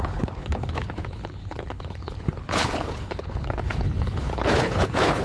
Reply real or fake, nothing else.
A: fake